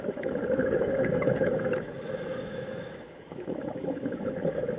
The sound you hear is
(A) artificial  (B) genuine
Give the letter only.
A